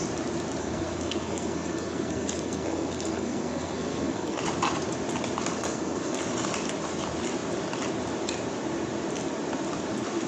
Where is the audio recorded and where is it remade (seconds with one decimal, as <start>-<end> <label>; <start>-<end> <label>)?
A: 0.0-0.6 recorded; 0.6-4.4 remade; 4.4-5.5 recorded; 5.5-6.2 remade; 6.2-10.3 recorded

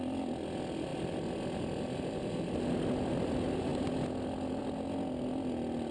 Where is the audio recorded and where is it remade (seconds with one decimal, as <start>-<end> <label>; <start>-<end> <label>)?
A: 0.0-5.9 recorded

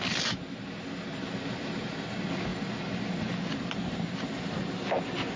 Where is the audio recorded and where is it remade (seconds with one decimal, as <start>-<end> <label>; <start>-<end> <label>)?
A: 0.0-5.4 recorded

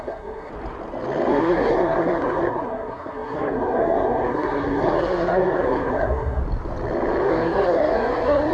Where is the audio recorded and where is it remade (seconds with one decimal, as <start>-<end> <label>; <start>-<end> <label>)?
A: 0.0-0.5 remade; 0.5-1.3 recorded; 1.3-6.4 remade; 6.4-7.3 recorded; 7.3-8.5 remade

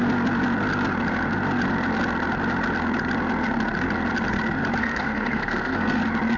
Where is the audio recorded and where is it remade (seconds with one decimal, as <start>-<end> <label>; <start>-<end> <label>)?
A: 0.0-4.8 recorded; 4.8-6.0 remade; 6.0-6.4 recorded

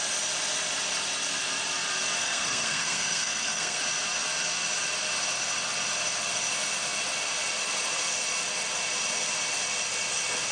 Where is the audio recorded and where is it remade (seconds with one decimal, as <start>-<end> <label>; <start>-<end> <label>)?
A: 0.0-2.2 recorded; 2.2-3.8 remade; 3.8-10.5 recorded

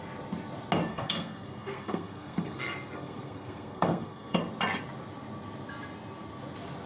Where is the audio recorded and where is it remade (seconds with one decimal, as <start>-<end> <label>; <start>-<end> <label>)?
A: 0.0-0.9 recorded; 0.9-4.4 remade; 4.4-6.9 recorded

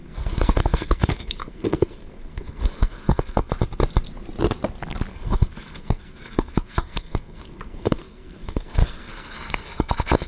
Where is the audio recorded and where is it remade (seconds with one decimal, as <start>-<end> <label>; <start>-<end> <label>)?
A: 0.0-3.5 remade; 3.5-5.1 recorded; 5.1-10.3 remade